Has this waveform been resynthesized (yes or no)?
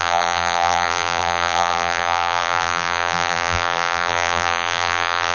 yes